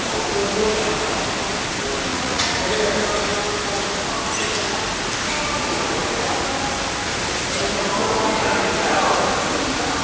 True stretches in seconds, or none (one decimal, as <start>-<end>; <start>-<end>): 0.0-2.1; 2.7-10.0